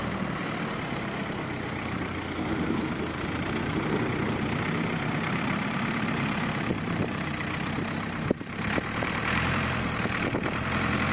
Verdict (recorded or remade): remade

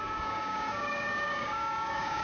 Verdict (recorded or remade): remade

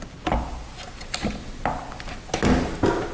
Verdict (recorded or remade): recorded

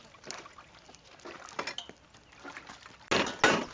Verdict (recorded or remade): recorded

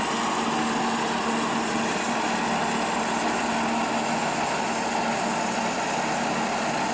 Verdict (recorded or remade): recorded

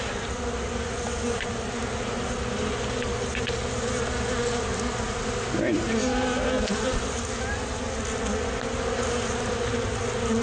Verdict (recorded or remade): recorded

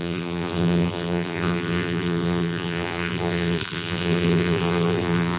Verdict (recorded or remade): remade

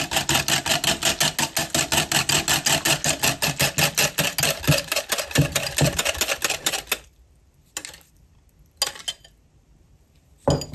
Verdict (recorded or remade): recorded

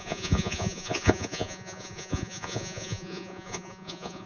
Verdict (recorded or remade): remade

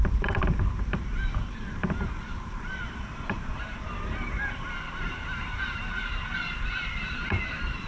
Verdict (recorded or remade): remade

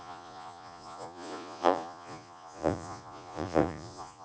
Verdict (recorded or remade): remade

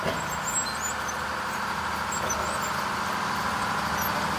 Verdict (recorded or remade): recorded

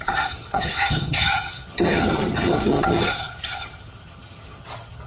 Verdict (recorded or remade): remade